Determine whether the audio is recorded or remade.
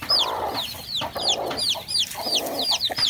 remade